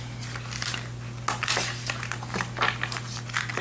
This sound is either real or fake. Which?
real